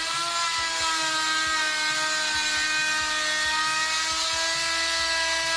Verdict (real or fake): real